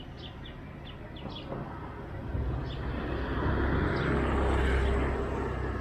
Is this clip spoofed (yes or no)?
no